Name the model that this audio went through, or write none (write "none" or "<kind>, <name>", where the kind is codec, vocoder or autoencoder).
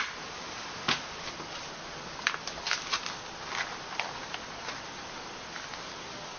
none